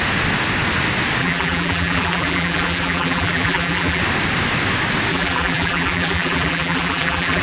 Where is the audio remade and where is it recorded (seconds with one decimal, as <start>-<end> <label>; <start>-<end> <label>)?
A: 0.0-1.2 recorded; 1.2-4.0 remade; 4.0-5.1 recorded; 5.1-7.4 remade